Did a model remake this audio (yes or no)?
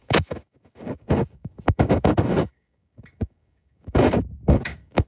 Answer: yes